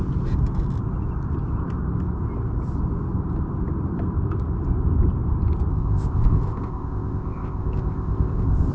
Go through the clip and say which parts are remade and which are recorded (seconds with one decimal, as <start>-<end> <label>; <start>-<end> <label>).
0.0-5.7 recorded; 5.7-8.7 remade